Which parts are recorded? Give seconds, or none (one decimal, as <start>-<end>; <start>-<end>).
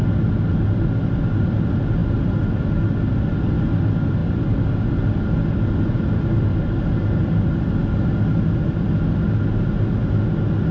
0.0-10.7